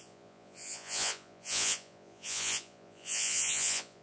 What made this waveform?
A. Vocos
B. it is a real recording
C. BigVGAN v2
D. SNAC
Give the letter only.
A